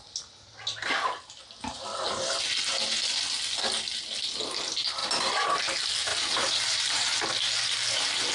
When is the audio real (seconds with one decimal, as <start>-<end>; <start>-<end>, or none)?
0.0-1.9; 2.4-5.0; 5.6-6.1; 7.2-8.3